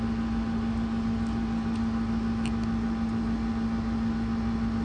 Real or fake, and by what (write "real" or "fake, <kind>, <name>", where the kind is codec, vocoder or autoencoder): real